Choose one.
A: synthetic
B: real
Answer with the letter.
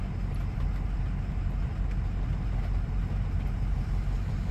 B